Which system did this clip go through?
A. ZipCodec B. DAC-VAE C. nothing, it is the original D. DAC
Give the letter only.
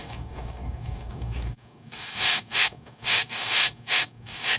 D